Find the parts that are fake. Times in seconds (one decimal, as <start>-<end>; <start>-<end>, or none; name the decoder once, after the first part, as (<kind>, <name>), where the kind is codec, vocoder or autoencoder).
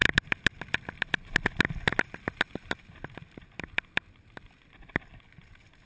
none